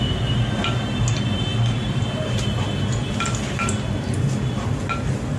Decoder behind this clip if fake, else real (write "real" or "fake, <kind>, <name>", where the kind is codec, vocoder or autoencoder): real